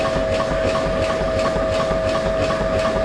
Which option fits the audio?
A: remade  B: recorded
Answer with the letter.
B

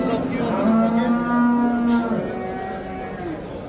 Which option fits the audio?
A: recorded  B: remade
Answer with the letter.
A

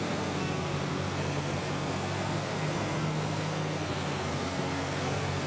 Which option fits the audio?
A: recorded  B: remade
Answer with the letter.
B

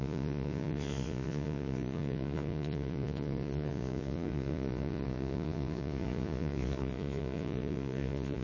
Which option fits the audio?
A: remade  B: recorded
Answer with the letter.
A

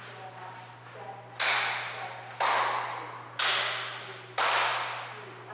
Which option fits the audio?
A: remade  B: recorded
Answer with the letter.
B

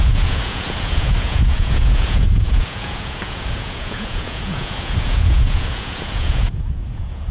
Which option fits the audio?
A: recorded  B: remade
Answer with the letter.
B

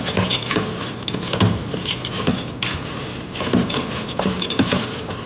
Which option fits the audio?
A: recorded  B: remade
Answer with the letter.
A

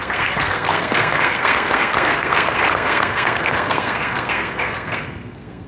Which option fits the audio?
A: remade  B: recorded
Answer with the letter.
A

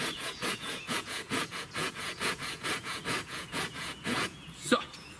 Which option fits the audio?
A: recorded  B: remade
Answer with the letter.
B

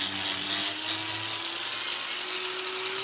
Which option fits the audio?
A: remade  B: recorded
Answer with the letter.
B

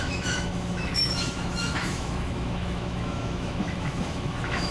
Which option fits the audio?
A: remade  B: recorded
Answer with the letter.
A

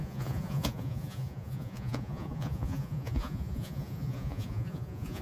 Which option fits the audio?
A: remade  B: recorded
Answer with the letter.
A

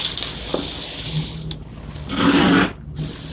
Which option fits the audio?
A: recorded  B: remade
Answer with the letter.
A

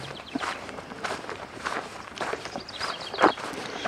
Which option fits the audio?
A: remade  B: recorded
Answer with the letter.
A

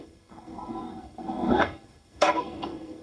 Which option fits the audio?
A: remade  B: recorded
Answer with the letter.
A